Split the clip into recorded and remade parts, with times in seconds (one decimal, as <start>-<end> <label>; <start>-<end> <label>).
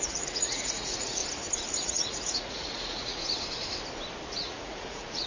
0.0-1.2 remade; 1.2-1.8 recorded; 1.8-3.2 remade; 3.2-4.3 recorded; 4.3-5.3 remade